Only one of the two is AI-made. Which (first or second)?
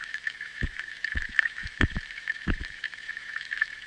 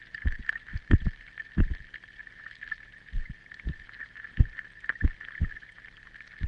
first